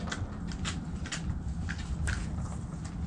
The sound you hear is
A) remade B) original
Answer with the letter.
B